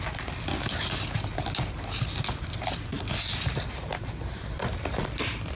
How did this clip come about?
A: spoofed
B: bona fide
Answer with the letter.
B